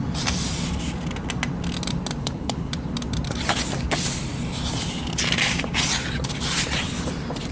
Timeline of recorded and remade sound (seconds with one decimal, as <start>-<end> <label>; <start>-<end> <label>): 0.0-2.2 recorded; 2.2-2.7 remade; 2.7-7.5 recorded

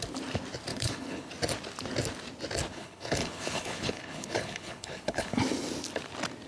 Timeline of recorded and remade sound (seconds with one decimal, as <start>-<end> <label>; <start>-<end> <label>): 0.0-0.7 recorded; 0.7-1.3 remade; 1.3-2.7 recorded; 2.7-5.4 remade; 5.4-6.5 recorded